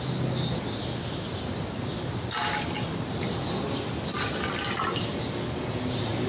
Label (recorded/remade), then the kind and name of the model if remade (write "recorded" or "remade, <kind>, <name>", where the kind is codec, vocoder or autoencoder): recorded